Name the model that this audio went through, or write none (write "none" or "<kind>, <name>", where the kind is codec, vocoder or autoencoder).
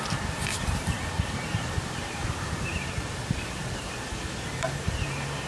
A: vocoder, BigVGAN v2